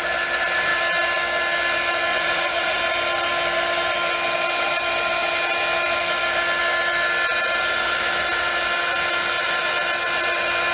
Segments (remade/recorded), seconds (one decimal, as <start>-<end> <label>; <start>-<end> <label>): 0.0-2.1 recorded; 2.1-2.8 remade; 2.8-10.7 recorded